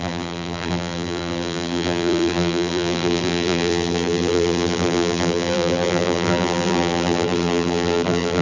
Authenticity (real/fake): fake